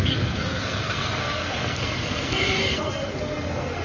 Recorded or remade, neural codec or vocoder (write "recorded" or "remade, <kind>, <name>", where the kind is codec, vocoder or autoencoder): remade, codec, SNAC